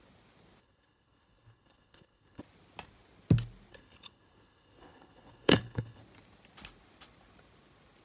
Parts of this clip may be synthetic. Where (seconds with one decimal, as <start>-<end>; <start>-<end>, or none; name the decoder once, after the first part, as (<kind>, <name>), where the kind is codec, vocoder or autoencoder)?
0.6-2.4 (codec, HILCodec); 3.7-6.0